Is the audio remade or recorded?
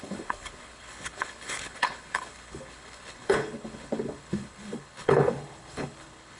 remade